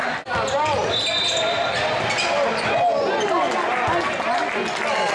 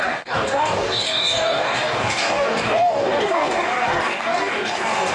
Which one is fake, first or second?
second